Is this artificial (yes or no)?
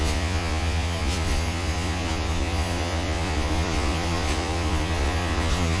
yes